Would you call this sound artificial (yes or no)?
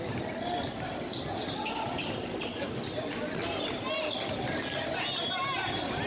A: no